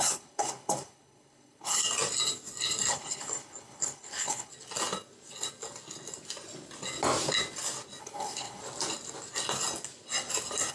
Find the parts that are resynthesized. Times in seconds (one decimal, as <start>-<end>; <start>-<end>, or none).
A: 0.0-1.8; 2.9-4.5; 8.0-8.6